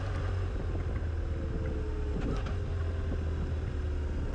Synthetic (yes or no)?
no